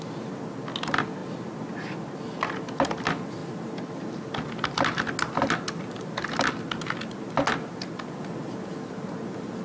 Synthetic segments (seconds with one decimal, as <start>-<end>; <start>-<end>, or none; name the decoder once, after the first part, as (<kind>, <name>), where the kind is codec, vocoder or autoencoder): none